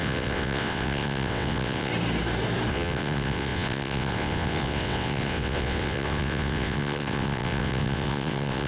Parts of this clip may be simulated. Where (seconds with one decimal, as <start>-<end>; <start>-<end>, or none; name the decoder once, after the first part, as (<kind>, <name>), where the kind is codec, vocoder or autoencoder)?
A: 0.0-1.9 (vocoder, WaveNeXt); 2.7-8.7